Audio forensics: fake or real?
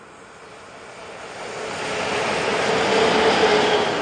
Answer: real